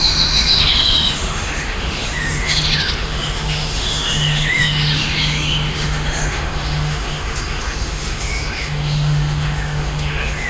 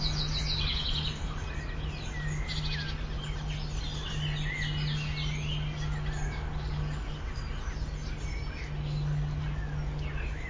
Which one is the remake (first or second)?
first